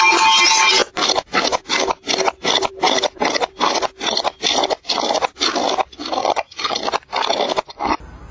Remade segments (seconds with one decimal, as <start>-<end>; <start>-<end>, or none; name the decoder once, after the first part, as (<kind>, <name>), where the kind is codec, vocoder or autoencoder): 6.2-6.8 (vocoder, HiFi-GAN)